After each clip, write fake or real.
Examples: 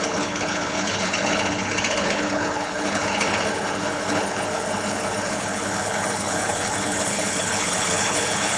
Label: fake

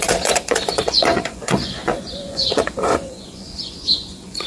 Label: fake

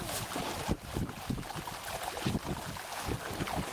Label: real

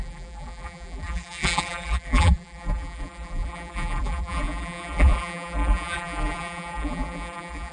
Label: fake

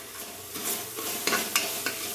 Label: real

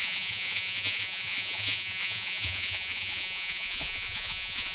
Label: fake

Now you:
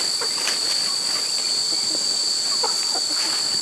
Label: real